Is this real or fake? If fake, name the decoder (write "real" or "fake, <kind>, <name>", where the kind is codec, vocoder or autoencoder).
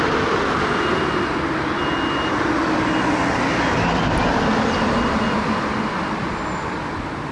real